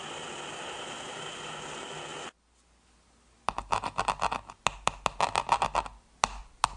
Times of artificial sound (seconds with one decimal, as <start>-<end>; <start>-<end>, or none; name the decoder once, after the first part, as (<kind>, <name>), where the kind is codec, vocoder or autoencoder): none